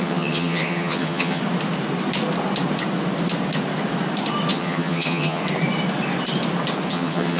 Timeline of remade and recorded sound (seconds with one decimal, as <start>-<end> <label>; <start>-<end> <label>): 0.0-1.4 remade; 1.4-4.5 recorded; 4.5-5.4 remade; 5.4-6.9 recorded; 6.9-7.4 remade